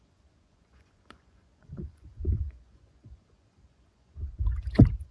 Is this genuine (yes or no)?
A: no